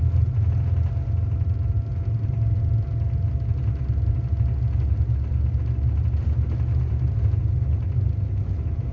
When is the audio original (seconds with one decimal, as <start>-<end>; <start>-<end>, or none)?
0.0-8.9